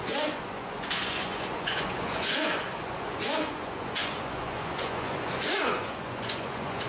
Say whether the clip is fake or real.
fake